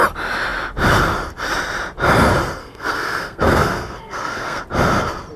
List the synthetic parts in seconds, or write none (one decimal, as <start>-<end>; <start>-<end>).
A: 2.6-4.6